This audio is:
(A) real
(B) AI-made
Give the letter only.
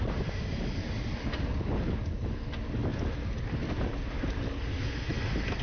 A